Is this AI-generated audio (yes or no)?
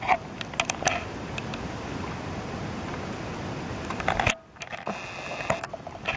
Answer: no